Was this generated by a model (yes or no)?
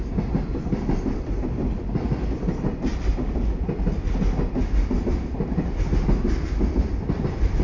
no